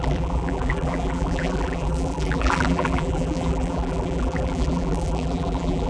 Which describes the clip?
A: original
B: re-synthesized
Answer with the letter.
B